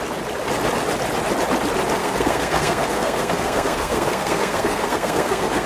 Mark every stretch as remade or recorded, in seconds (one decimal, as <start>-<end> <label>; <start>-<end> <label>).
0.0-2.0 recorded; 2.0-5.7 remade

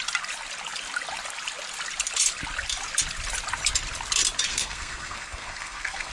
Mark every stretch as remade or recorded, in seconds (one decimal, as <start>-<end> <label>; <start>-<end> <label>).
0.0-4.5 recorded; 4.5-6.1 remade

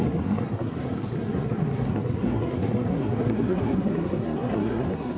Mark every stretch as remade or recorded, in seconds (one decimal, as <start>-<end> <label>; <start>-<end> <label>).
0.0-5.2 remade

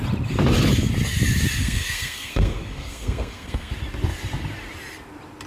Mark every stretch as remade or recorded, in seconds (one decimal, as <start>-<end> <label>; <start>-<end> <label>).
0.0-1.6 recorded; 1.6-3.7 remade; 3.7-5.5 recorded

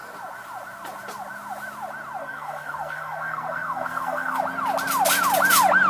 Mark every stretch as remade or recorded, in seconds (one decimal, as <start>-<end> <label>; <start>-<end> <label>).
0.0-2.2 recorded; 2.2-4.4 remade; 4.4-5.9 recorded

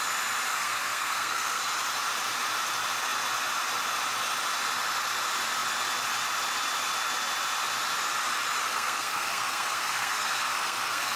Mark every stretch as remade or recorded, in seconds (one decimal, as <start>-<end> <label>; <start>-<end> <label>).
0.0-0.5 recorded; 0.5-1.6 remade; 1.6-8.7 recorded; 8.7-11.2 remade